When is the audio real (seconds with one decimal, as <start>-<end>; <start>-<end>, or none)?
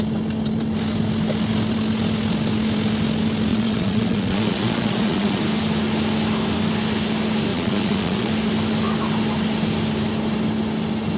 0.0-3.5; 5.4-7.5; 8.3-11.2